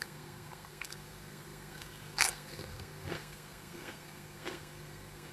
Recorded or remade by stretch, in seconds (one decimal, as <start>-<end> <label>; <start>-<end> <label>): 0.0-5.3 remade